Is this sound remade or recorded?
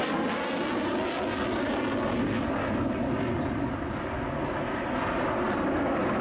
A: recorded